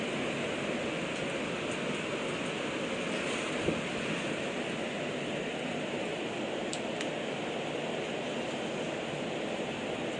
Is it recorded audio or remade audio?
recorded